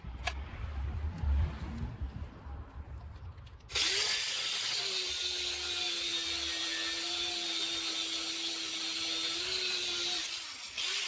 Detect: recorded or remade recorded